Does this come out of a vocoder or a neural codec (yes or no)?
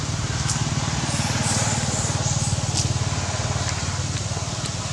no